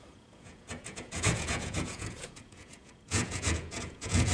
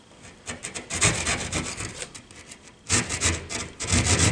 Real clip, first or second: second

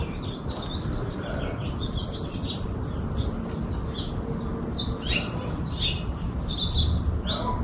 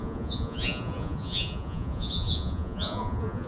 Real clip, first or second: first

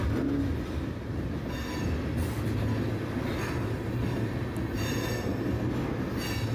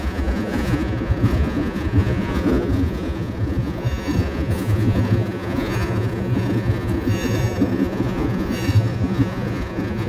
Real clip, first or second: first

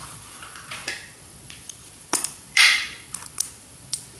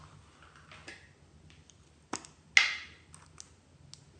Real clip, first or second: second